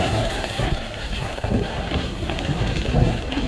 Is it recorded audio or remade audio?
remade